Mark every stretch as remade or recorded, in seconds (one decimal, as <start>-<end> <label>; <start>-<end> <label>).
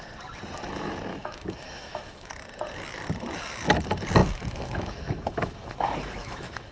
0.0-1.1 recorded; 1.1-2.3 remade; 2.3-4.2 recorded; 4.2-6.7 remade